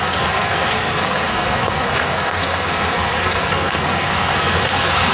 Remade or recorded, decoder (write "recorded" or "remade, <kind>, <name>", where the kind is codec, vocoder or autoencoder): remade, codec, SNAC